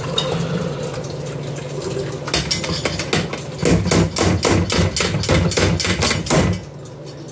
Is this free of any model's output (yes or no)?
yes